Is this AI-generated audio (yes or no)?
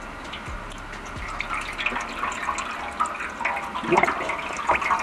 no